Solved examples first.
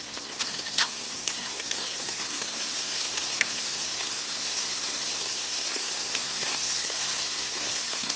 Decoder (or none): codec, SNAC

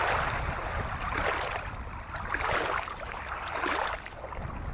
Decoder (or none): none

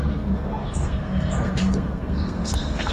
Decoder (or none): codec, SNAC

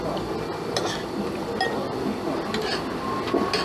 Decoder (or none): none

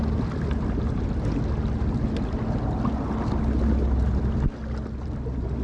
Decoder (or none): none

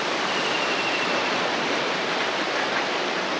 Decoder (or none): none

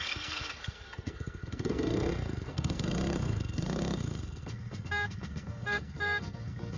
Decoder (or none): codec, SNAC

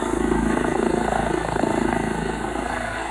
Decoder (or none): codec, SNAC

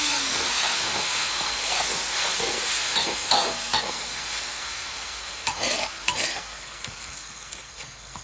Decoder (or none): codec, SNAC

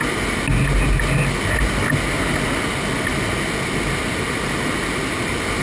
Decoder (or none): none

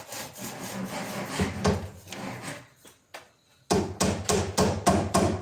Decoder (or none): none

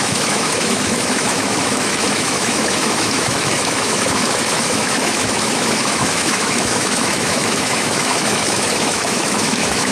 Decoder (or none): autoencoder, DAC-VAE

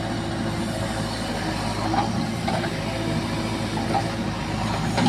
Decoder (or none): none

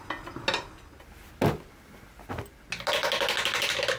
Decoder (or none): none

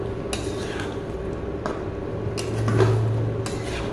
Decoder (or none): none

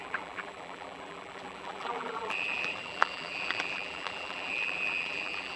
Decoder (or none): vocoder, BigVGAN v2